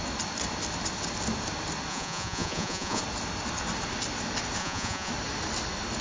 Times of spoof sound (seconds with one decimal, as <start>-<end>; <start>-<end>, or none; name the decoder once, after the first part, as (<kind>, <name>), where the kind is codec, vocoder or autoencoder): 1.9-3.0 (vocoder, Vocos); 4.6-5.1